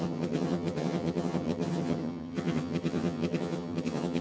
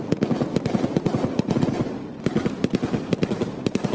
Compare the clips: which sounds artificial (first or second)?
first